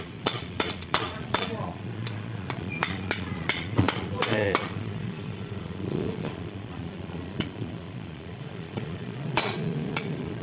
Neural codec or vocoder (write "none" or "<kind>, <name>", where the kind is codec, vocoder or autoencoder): vocoder, Vocos